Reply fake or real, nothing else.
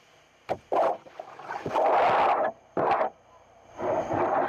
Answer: real